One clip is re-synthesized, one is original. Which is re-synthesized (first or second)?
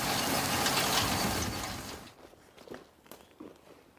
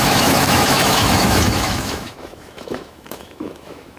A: second